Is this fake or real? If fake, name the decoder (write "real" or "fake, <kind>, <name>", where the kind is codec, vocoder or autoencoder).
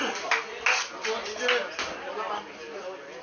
real